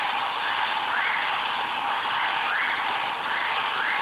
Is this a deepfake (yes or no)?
no